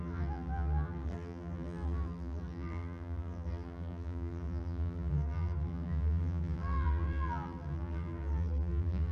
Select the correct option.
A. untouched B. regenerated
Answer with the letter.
B